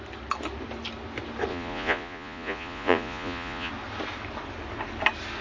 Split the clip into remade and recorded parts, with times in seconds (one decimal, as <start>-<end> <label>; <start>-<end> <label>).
0.0-1.5 recorded; 1.5-3.7 remade; 3.7-5.4 recorded